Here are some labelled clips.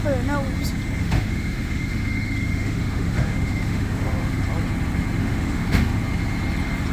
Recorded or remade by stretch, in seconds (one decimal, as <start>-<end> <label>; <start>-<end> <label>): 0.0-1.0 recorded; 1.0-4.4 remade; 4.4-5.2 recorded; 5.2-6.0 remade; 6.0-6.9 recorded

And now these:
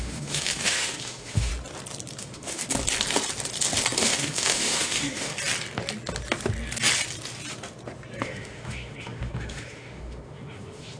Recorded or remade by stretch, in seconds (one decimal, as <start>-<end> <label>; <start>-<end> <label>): 0.0-1.5 remade; 1.5-2.2 recorded; 2.2-2.6 remade; 2.6-4.0 recorded; 4.0-5.3 remade; 5.3-8.2 recorded; 8.2-11.0 remade

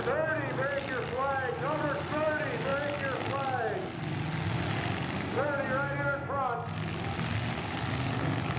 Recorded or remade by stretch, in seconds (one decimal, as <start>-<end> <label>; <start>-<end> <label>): 0.0-8.6 recorded

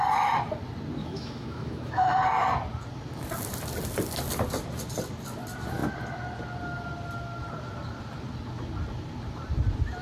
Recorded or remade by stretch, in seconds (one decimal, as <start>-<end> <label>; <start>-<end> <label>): 0.0-1.0 recorded; 1.0-2.2 remade; 2.2-10.0 recorded